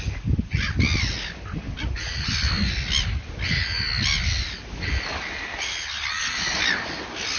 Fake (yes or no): no